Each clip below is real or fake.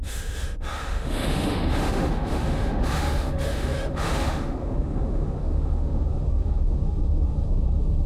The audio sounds fake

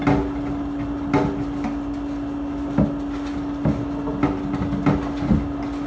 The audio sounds real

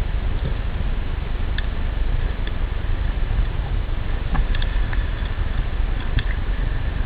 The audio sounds real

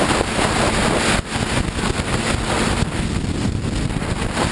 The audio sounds real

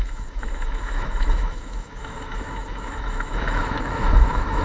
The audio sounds fake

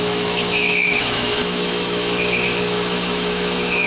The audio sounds fake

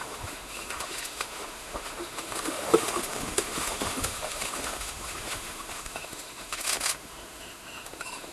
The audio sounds fake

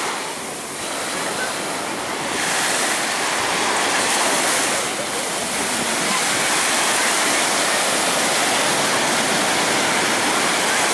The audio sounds real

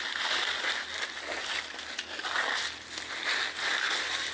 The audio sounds real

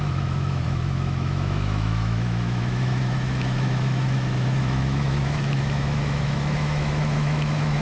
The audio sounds fake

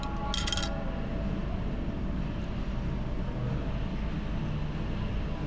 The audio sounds real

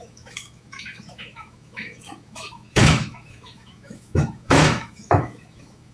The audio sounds fake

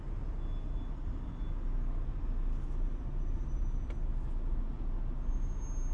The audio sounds real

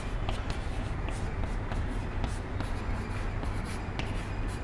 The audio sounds real